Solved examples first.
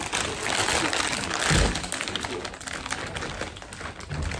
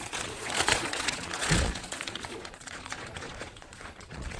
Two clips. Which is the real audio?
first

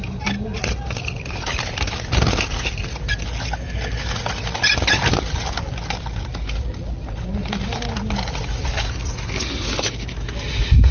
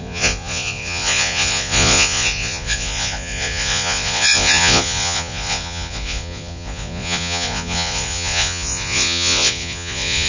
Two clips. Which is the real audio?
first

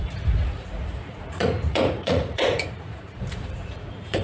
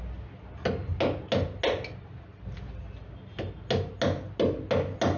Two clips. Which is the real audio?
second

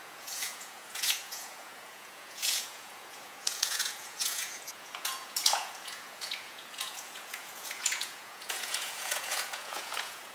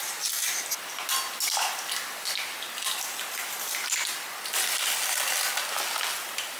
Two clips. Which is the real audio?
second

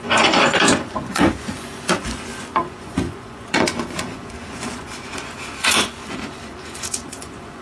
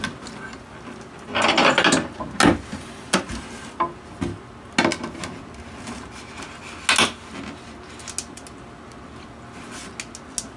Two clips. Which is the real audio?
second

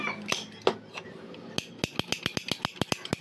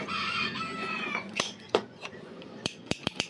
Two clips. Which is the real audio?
first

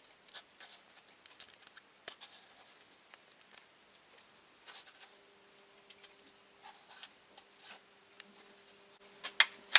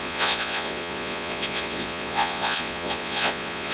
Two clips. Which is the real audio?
first